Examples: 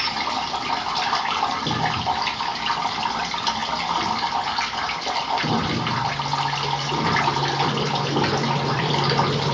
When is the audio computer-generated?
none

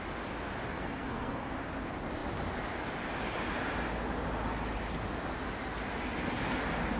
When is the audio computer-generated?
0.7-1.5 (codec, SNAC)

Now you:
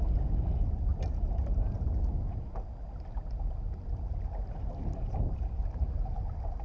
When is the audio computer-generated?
none